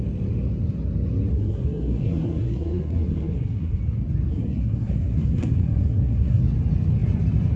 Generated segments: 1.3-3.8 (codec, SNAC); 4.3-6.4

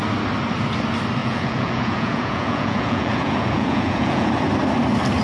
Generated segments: 1.2-4.3 (vocoder, Vocos)

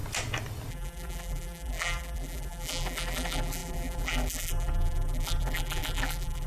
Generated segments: 0.7-6.5 (vocoder, BigVGAN v2)

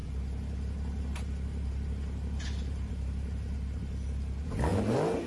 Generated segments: none